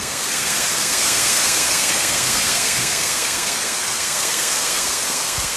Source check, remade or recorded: remade